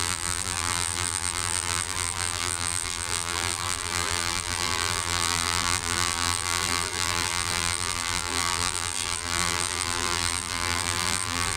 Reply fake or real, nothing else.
fake